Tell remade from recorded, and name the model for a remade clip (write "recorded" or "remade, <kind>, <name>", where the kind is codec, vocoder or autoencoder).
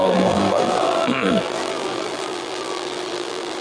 remade, vocoder, BigVGAN v2